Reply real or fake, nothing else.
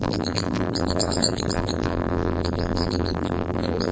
fake